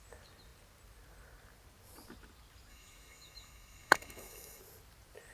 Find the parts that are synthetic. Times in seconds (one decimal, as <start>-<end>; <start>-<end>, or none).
2.7-4.6